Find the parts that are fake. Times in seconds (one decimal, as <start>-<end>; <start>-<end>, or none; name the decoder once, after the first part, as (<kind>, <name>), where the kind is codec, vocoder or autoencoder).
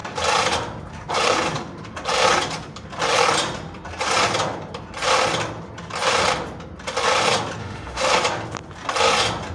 7.6-8.1 (autoencoder, DAC-VAE)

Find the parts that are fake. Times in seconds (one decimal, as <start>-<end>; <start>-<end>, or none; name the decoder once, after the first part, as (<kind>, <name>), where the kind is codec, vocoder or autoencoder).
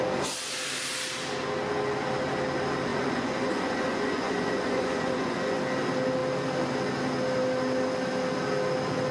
2.9-5.6 (vocoder, Vocos)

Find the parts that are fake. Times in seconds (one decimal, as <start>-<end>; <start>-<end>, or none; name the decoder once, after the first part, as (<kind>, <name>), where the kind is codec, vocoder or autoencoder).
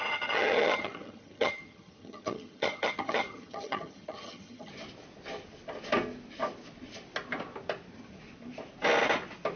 0.0-4.7 (vocoder, HiFi-GAN)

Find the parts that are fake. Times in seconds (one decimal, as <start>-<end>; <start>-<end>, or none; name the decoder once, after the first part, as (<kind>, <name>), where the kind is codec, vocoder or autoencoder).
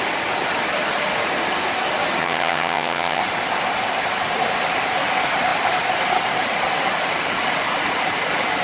2.2-3.2 (vocoder, HiFi-GAN)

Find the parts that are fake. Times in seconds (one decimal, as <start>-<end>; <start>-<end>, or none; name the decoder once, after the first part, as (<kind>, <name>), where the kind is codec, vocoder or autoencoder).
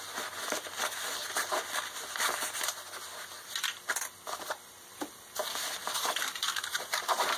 5.4-7.0 (vocoder, BigVGAN v2)